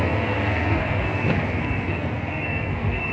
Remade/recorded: remade